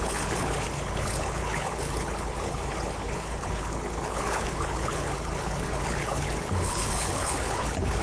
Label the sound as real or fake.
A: fake